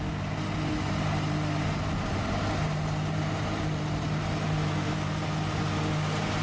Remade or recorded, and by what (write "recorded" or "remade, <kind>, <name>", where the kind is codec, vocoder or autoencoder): recorded